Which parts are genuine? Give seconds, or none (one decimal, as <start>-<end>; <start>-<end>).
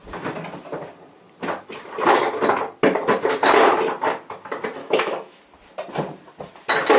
0.0-4.8; 5.4-7.0